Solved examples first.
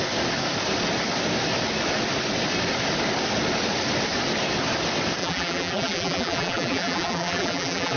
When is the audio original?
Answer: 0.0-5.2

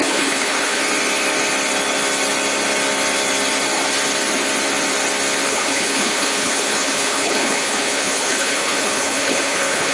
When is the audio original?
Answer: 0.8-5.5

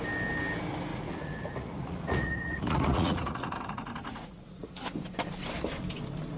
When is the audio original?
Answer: 0.0-0.9; 4.7-6.4